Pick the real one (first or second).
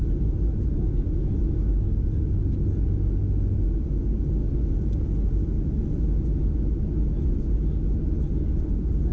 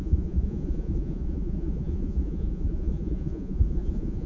first